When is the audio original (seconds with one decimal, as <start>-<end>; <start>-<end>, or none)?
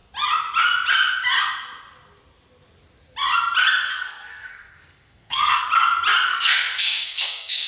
0.0-3.9; 5.7-6.3